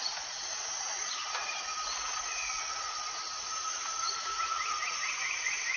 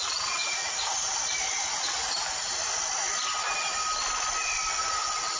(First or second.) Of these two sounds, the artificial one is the first